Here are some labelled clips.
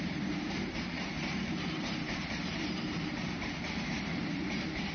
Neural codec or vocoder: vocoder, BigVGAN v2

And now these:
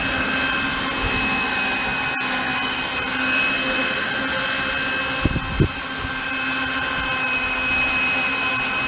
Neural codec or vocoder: none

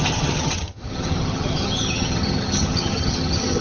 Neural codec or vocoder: vocoder, HiFi-GAN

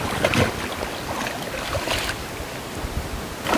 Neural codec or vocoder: none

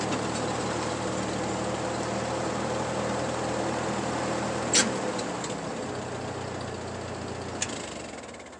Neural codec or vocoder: none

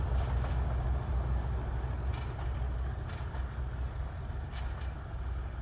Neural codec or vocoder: none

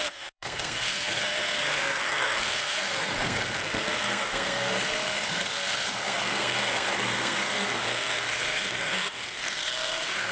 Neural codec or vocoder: codec, SNAC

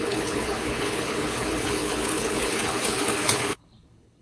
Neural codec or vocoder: codec, HILCodec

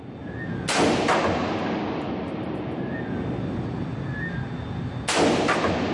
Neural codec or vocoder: none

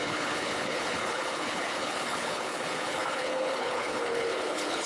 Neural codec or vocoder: codec, HILCodec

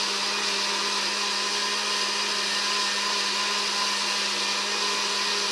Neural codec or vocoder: none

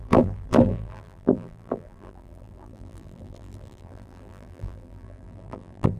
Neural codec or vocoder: vocoder, BigVGAN v2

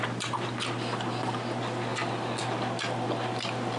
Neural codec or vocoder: none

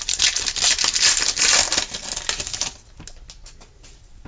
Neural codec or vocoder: none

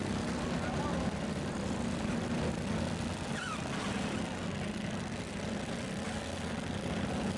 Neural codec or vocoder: none